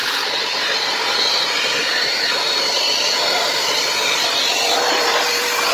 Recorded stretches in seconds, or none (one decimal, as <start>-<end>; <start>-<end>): 0.0-3.4